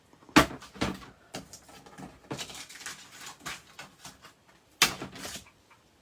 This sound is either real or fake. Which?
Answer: real